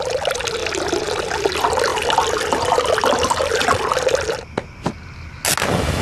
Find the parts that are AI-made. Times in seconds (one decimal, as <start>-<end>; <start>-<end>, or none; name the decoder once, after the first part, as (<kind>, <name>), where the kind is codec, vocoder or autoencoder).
none